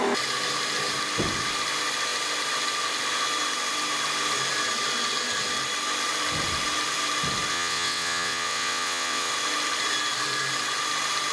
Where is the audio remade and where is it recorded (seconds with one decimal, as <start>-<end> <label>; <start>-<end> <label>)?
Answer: 0.0-7.5 recorded; 7.5-9.3 remade; 9.3-11.3 recorded